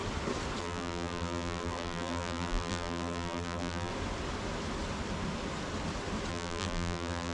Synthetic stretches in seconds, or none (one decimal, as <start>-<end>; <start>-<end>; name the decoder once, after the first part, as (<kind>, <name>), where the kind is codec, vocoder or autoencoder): 0.6-3.9 (vocoder, BigVGAN v2); 6.3-7.3